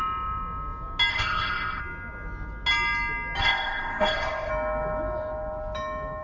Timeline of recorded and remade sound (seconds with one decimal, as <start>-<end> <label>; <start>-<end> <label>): 0.0-1.1 recorded; 1.1-1.8 remade; 1.8-3.4 recorded; 3.4-4.5 remade; 4.5-6.2 recorded